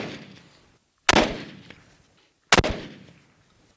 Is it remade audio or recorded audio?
recorded